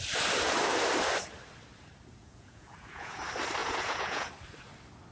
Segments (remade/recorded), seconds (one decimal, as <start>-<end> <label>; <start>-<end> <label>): 0.0-2.2 recorded; 2.2-3.2 remade; 3.2-3.6 recorded; 3.6-4.3 remade; 4.3-5.1 recorded